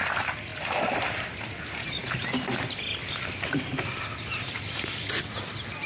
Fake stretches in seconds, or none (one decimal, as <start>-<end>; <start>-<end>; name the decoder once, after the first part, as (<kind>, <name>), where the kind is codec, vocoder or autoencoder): none